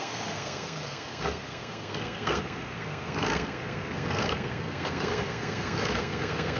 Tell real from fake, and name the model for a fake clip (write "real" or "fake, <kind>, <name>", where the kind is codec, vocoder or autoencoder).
fake, codec, SNAC